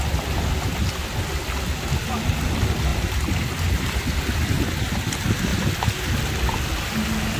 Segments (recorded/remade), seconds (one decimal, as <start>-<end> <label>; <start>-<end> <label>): 0.0-2.9 recorded; 2.9-3.9 remade; 3.9-7.4 recorded